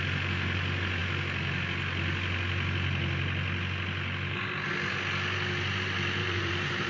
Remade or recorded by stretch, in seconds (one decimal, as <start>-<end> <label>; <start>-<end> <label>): 0.0-6.2 recorded; 6.2-6.9 remade

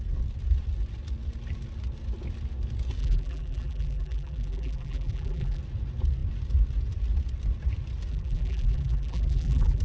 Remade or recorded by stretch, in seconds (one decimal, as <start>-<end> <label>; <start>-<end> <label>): 0.0-3.0 recorded; 3.0-5.6 remade; 5.6-8.1 recorded; 8.1-9.8 remade